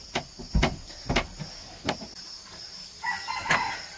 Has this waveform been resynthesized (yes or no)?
no